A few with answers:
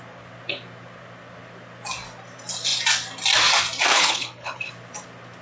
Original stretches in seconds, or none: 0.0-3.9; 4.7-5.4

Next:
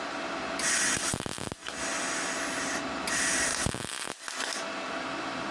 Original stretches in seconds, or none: 0.0-5.5